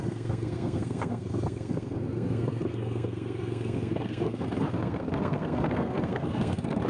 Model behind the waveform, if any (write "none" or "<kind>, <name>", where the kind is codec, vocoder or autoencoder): codec, SNAC